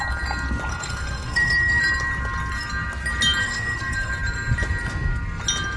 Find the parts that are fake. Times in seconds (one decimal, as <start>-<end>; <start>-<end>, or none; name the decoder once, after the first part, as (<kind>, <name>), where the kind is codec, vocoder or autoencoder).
0.7-1.8 (codec, SNAC); 3.4-4.1